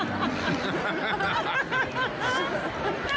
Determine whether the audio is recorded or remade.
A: recorded